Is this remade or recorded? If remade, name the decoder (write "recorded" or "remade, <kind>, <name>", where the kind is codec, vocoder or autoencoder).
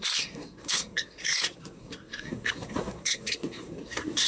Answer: remade, codec, SNAC